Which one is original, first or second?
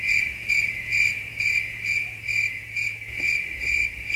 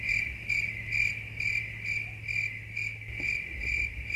second